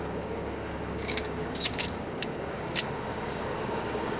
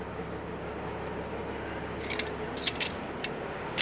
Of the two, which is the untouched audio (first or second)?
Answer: second